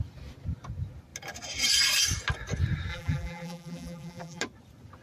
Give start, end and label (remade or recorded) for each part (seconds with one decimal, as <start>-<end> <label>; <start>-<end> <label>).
0.0-2.9 recorded; 2.9-4.4 remade; 4.4-5.0 recorded